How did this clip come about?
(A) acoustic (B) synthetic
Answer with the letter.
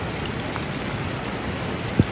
A